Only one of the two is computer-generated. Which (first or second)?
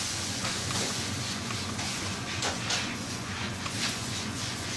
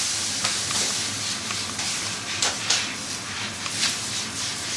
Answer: first